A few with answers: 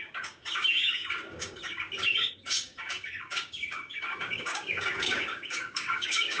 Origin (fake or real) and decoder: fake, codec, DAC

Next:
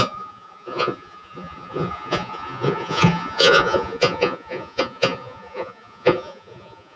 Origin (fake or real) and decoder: fake, vocoder, Vocos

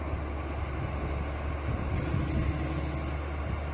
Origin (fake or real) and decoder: real